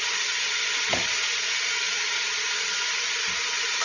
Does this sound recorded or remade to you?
recorded